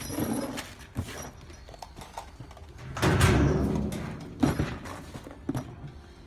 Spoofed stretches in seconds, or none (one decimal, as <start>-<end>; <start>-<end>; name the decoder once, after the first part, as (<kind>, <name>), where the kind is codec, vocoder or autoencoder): none